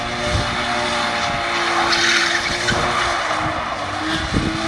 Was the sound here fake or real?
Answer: real